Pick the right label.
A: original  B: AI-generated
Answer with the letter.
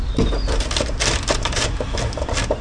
B